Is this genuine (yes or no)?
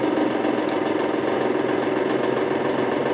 yes